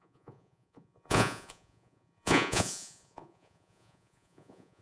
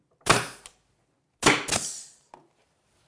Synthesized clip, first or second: first